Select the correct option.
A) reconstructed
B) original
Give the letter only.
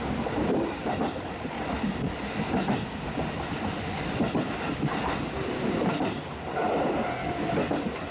B